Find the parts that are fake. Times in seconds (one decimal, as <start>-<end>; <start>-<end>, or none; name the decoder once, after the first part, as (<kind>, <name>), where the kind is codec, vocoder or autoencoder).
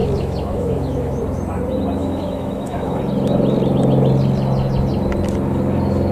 0.0-1.2 (autoencoder, DAC-VAE); 2.0-3.0